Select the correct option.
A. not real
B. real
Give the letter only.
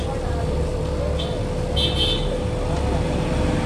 B